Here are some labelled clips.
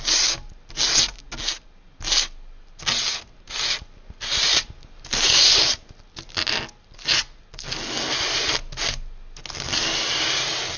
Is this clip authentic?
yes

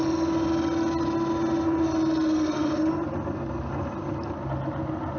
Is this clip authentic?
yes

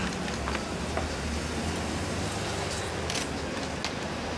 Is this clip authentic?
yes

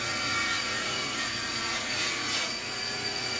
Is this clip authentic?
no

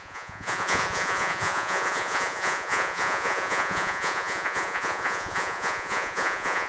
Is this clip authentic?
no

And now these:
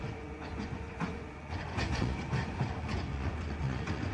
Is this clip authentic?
no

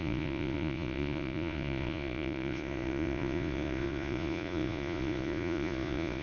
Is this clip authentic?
no